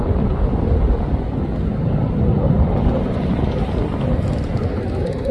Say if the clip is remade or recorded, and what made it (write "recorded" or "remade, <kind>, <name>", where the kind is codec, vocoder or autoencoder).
recorded